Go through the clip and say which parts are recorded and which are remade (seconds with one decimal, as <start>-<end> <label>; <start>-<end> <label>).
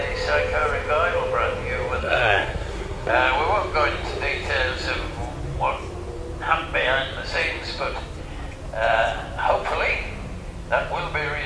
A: 0.0-2.0 recorded; 2.0-3.1 remade; 3.1-11.5 recorded